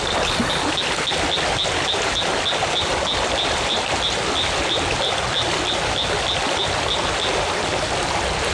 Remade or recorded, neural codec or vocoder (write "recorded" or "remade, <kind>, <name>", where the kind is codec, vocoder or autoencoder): recorded